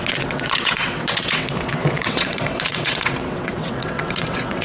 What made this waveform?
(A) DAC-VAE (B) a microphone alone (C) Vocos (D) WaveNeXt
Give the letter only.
D